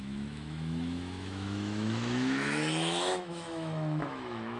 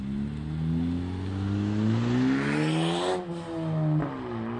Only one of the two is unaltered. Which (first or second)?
second